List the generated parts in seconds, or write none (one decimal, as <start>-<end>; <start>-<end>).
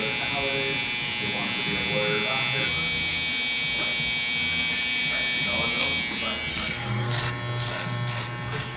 6.5-7.1